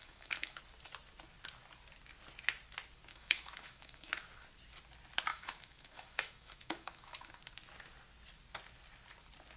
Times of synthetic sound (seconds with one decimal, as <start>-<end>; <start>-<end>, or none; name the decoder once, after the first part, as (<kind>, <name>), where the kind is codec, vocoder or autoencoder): 0.0-0.6 (autoencoder, DAC-VAE); 3.1-4.1; 5.3-7.4